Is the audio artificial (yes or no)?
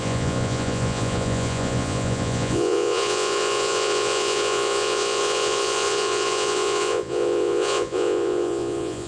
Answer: yes